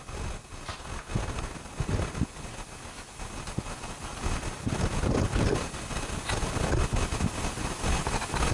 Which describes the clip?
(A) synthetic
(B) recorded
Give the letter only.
B